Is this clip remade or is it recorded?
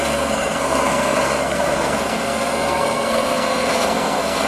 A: remade